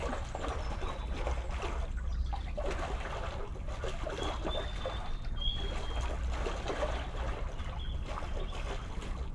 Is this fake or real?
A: real